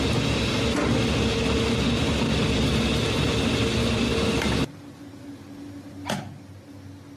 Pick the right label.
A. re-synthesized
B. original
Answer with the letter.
B